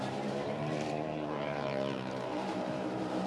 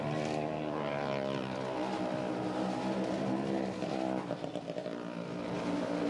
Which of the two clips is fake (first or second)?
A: first